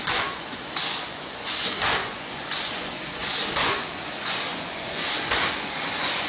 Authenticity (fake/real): fake